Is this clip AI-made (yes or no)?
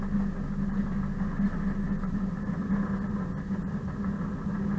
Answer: no